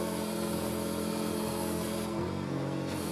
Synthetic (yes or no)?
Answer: yes